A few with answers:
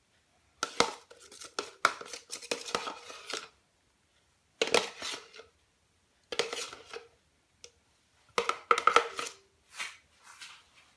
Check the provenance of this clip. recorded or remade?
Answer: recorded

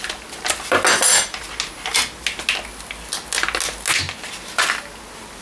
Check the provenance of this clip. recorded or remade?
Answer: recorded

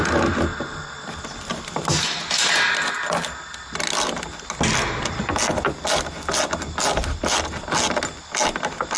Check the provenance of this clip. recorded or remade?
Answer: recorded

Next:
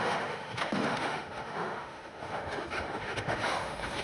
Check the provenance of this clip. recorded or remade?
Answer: remade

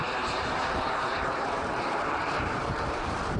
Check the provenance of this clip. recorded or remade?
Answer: remade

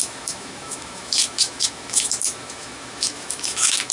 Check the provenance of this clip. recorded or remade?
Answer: remade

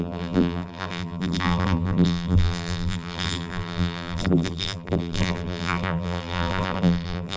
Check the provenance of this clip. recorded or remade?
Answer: remade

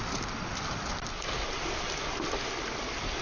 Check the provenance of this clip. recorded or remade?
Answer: recorded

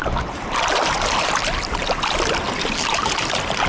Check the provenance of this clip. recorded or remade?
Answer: recorded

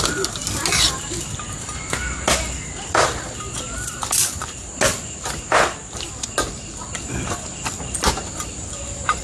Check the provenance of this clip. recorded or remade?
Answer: recorded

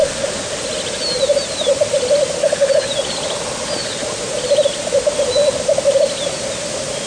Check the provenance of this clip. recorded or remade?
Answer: recorded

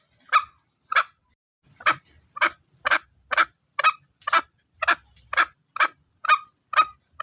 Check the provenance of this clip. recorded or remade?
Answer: recorded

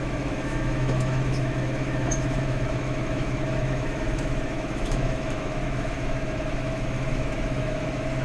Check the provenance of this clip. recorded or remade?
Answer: remade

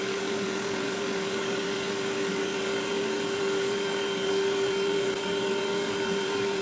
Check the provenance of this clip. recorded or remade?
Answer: remade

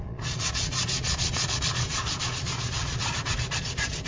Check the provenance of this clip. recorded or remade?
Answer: remade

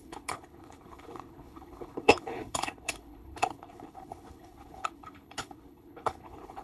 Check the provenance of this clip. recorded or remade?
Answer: remade